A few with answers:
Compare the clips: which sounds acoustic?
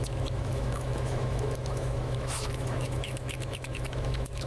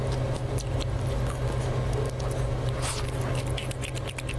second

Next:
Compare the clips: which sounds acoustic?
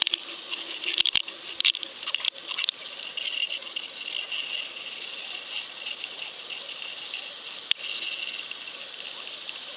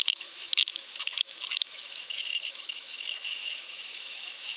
first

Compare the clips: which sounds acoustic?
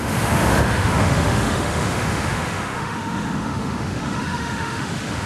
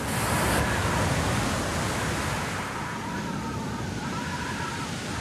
second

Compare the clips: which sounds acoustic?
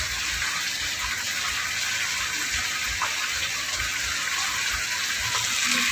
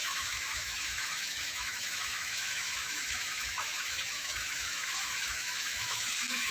first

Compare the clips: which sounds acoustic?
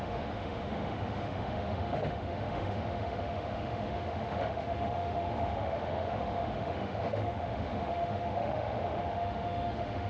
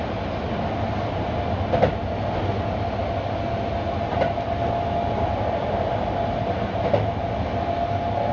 second